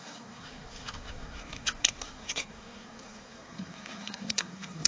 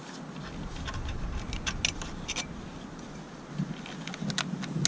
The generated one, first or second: first